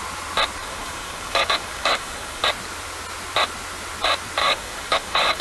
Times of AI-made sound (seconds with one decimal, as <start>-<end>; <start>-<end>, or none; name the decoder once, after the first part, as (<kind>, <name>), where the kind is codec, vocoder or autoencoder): 0.6-2.4 (codec, DAC); 4.4-5.4